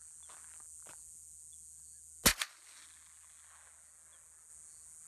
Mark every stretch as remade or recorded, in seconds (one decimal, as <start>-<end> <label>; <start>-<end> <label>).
0.0-5.1 recorded